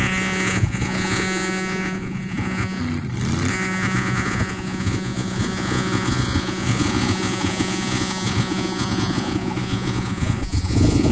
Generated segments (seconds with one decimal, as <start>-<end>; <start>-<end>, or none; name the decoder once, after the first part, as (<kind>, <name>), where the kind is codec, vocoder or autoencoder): 0.0-2.8 (vocoder, Vocos); 3.5-11.1